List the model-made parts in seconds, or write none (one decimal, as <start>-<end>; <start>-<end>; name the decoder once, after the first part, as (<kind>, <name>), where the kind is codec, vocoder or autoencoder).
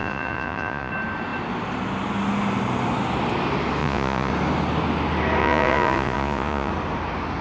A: 0.0-0.9 (vocoder, Vocos); 3.8-4.3; 5.4-6.7